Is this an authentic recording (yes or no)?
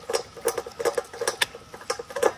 yes